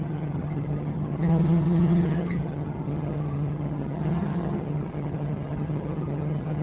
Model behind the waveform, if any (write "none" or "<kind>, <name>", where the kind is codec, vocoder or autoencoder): vocoder, HiFi-GAN